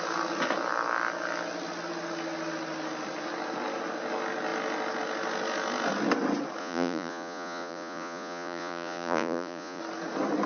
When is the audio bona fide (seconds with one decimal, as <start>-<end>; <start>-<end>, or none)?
0.0-6.6; 9.8-10.5